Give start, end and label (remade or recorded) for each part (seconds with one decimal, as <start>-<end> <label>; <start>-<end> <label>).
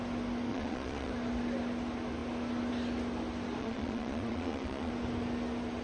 0.0-0.5 recorded; 0.5-1.1 remade; 1.1-3.6 recorded; 3.6-4.9 remade; 4.9-5.8 recorded